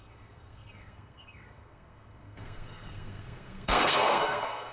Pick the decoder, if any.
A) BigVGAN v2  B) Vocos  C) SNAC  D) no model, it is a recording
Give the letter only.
C